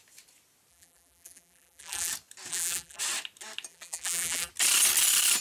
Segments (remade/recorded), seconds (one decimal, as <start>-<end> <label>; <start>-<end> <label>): 0.0-0.7 recorded; 0.7-2.1 remade; 2.1-2.5 recorded; 2.5-3.0 remade; 3.0-3.7 recorded; 3.7-4.5 remade; 4.5-5.4 recorded